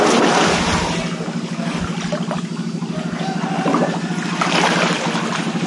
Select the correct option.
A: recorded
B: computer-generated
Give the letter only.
A